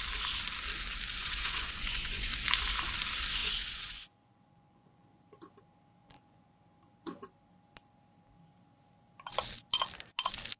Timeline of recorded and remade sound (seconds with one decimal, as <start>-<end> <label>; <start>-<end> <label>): 0.0-1.2 recorded; 1.2-2.3 remade; 2.3-3.4 recorded; 3.4-5.2 remade; 5.2-6.0 recorded; 6.0-6.6 remade; 6.6-10.6 recorded